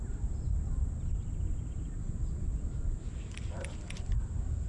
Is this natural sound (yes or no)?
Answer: yes